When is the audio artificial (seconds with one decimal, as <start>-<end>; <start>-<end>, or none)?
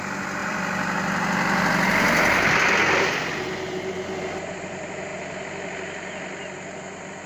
0.4-3.9